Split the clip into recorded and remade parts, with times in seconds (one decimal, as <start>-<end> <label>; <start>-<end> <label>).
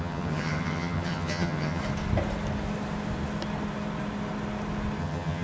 0.0-1.8 remade; 1.8-5.0 recorded; 5.0-5.4 remade